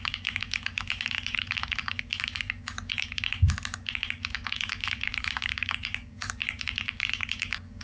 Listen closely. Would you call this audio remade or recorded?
remade